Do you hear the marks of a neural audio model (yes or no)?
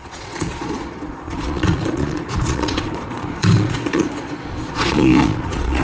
yes